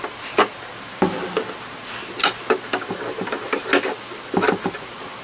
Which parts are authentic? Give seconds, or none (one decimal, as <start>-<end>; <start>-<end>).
0.0-5.2